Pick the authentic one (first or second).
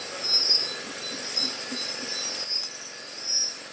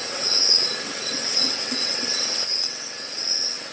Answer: first